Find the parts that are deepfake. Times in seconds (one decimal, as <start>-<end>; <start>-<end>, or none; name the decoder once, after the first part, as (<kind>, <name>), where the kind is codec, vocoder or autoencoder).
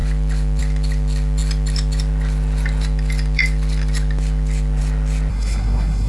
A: 5.3-6.1 (codec, SNAC)